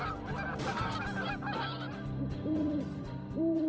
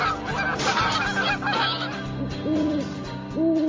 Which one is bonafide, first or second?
second